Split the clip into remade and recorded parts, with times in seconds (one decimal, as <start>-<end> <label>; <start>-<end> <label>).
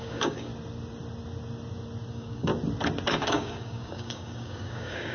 0.0-0.5 remade; 0.5-2.1 recorded; 2.1-2.5 remade; 2.5-3.1 recorded; 3.1-5.1 remade